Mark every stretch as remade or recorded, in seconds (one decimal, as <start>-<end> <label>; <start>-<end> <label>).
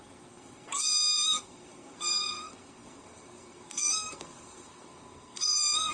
0.0-5.9 remade